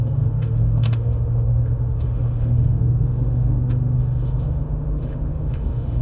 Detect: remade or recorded remade